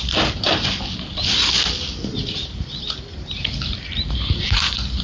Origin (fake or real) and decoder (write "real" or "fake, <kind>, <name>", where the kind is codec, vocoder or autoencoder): real